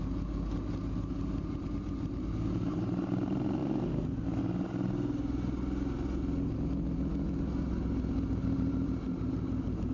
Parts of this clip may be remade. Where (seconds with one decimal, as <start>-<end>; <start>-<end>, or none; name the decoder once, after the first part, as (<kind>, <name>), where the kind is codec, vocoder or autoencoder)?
none